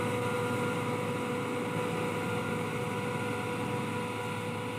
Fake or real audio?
real